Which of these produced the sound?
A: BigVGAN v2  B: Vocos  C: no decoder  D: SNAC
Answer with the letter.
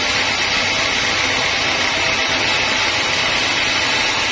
C